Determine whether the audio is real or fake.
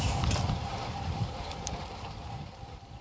fake